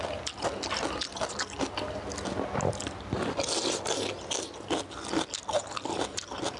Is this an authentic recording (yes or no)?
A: yes